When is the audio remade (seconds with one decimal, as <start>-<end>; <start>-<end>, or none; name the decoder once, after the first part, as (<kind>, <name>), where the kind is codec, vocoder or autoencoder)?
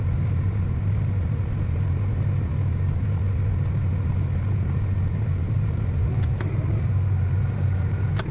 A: 0.0-2.5 (vocoder, BigVGAN v2); 5.1-8.3